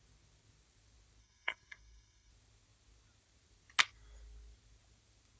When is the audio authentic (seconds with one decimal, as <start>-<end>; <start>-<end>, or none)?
0.0-1.2; 2.3-5.4